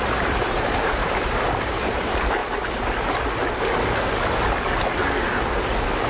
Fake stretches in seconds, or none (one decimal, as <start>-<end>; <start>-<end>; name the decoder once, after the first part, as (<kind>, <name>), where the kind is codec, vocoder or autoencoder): 0.0-1.0 (vocoder, BigVGAN v2); 1.6-2.4